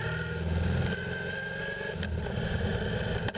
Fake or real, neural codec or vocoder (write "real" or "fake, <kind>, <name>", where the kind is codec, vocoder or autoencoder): real